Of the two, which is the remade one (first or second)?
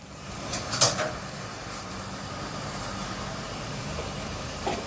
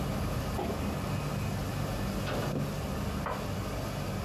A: first